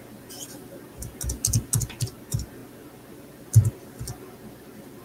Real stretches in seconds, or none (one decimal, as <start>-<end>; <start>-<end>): 0.0-5.0